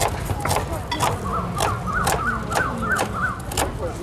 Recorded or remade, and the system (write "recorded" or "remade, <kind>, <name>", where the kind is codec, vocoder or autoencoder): recorded